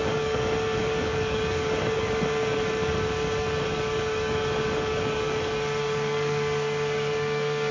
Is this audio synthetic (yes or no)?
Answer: yes